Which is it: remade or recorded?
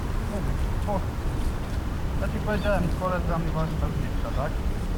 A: remade